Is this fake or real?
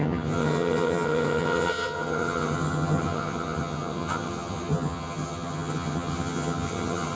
fake